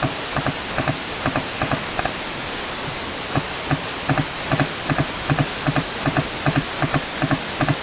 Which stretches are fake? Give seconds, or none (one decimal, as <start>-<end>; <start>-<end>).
none